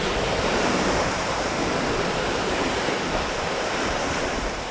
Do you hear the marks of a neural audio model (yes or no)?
yes